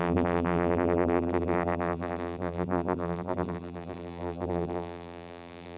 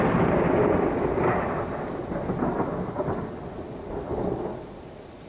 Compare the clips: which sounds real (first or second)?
second